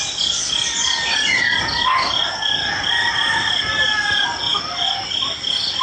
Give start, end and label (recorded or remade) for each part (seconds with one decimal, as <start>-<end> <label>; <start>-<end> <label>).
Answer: 0.0-5.8 recorded